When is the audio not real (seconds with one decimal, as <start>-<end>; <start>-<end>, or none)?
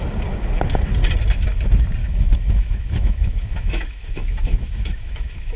2.0-5.6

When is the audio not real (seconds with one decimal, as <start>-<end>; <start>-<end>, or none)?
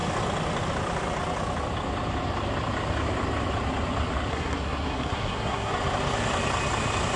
4.3-5.7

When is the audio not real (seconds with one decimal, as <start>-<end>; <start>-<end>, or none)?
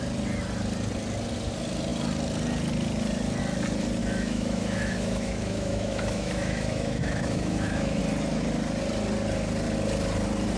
4.0-8.0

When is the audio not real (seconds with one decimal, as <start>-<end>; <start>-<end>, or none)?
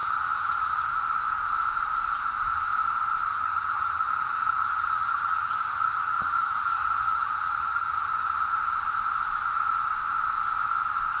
0.0-0.9; 3.3-8.5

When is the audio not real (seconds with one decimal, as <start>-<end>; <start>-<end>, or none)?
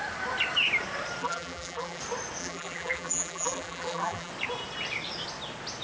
1.2-2.0; 2.4-4.3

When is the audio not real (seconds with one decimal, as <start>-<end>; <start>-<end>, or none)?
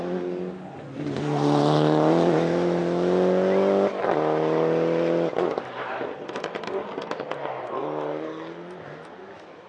none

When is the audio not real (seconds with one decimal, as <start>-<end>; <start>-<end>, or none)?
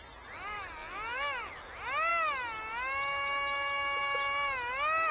0.8-1.5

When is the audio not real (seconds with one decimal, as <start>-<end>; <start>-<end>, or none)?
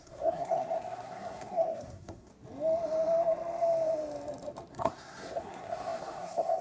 0.0-2.3; 4.7-6.6